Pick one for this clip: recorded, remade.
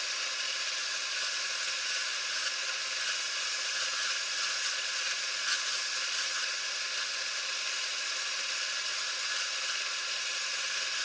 recorded